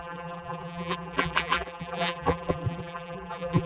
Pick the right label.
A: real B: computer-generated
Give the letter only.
B